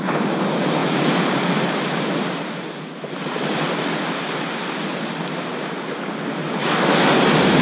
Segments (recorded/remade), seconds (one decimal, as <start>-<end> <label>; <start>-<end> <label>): 0.0-7.6 recorded

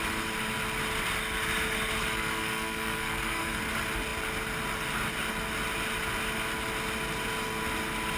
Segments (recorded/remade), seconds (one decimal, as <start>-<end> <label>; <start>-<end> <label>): 0.0-2.1 recorded; 2.1-3.6 remade; 3.6-8.2 recorded